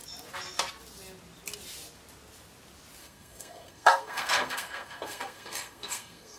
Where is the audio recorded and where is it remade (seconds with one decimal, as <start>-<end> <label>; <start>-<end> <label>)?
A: 0.0-3.0 recorded; 3.0-6.4 remade